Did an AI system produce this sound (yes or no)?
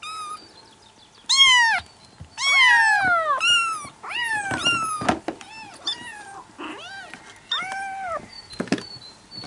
no